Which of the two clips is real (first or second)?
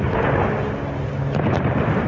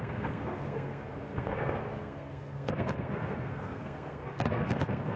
first